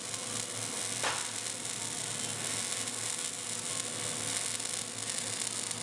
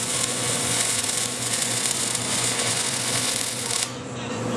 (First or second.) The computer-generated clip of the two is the second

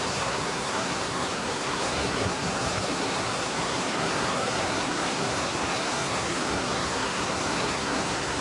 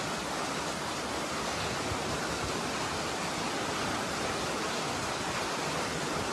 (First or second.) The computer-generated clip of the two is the first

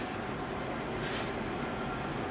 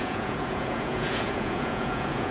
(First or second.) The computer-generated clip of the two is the second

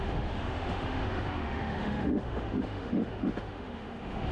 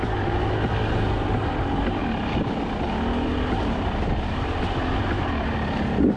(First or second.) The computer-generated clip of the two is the first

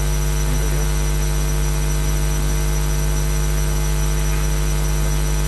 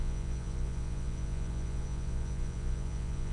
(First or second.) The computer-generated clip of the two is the second